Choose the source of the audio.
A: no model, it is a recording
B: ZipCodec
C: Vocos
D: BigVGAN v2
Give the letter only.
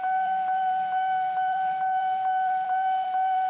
D